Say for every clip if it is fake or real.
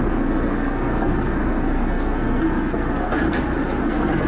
fake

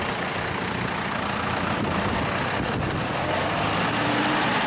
real